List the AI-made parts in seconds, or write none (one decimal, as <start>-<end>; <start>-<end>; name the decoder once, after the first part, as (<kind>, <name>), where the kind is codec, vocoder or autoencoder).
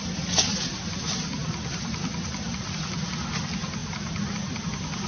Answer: none